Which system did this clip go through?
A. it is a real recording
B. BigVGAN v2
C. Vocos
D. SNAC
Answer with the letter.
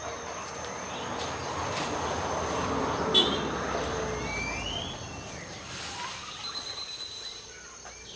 A